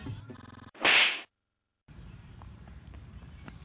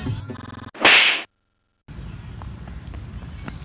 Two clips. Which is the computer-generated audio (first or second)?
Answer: first